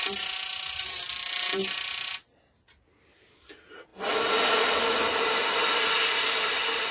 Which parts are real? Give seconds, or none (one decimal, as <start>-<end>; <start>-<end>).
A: 0.0-6.9